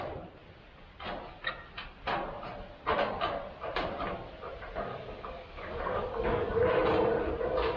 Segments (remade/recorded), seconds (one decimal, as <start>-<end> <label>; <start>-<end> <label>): 0.0-4.9 recorded; 4.9-6.7 remade; 6.7-7.8 recorded